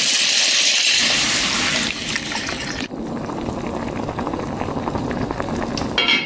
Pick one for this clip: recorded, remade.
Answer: recorded